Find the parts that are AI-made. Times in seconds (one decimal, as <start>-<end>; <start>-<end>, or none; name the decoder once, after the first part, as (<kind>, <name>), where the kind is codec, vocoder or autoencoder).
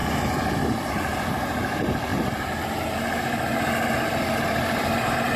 0.9-2.1 (vocoder, BigVGAN v2)